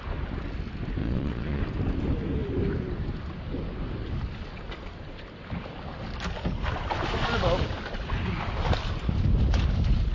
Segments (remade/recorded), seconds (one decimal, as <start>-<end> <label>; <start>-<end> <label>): 0.0-1.0 recorded; 1.0-1.6 remade; 1.6-10.1 recorded